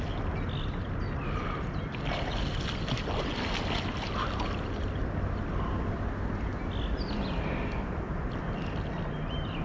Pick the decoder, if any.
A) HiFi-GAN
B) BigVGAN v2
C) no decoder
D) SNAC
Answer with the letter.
C